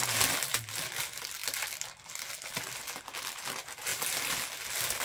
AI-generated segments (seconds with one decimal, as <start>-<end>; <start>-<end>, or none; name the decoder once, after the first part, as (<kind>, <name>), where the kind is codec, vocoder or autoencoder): none